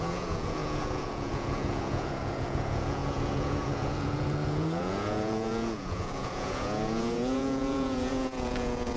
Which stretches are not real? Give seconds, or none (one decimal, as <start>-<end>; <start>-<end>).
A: 0.0-9.0